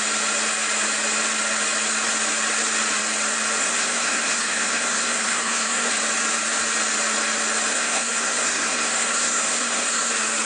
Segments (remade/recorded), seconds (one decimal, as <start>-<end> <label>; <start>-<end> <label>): 0.0-3.6 recorded; 3.6-5.9 remade; 5.9-7.7 recorded; 7.7-10.1 remade; 10.1-10.5 recorded

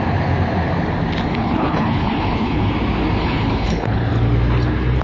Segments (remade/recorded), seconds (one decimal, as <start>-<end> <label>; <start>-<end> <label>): 0.0-1.3 recorded; 1.3-2.7 remade; 2.7-3.2 recorded; 3.2-4.0 remade; 4.0-5.0 recorded

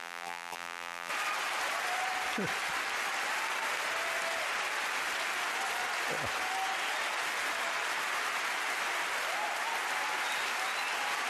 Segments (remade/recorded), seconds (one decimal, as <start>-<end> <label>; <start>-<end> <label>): 0.0-1.1 remade; 1.1-11.3 recorded

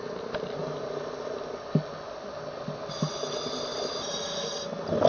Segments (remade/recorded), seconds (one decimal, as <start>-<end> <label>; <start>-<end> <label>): 0.0-0.6 recorded; 0.6-1.6 remade; 1.6-5.1 recorded

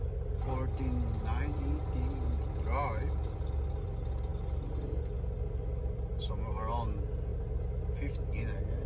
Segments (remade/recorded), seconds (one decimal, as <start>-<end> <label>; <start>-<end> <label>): 0.0-7.3 recorded; 7.3-7.8 remade; 7.8-8.9 recorded

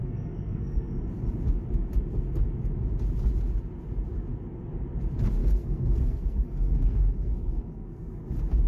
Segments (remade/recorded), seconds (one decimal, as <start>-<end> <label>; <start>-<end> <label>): 0.0-1.0 remade; 1.0-5.4 recorded; 5.4-8.2 remade; 8.2-8.7 recorded

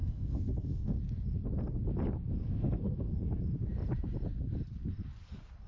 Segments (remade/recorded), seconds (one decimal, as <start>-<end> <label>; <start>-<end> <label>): 0.0-1.0 remade; 1.0-2.4 recorded; 2.4-3.4 remade; 3.4-5.7 recorded